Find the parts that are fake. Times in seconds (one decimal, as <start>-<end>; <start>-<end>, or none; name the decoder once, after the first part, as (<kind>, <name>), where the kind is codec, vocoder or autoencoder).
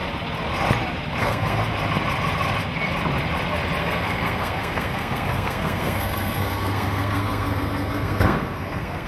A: 1.2-1.6 (codec, SNAC); 3.8-9.1